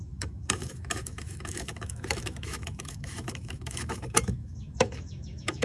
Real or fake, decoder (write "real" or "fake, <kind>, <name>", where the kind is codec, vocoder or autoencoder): fake, autoencoder, DAC-VAE